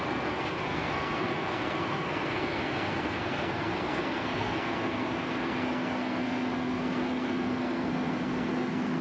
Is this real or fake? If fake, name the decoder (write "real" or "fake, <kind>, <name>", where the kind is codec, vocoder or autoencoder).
fake, codec, SNAC